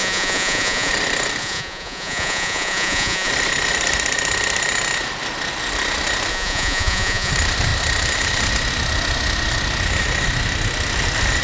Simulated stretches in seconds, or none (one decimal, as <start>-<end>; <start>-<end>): 0.0-0.9; 1.4-3.3; 6.3-7.3